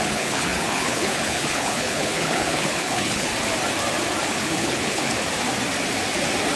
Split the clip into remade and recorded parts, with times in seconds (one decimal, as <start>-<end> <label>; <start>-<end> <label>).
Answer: 0.0-3.3 remade; 3.3-4.3 recorded; 4.3-5.1 remade; 5.1-6.6 recorded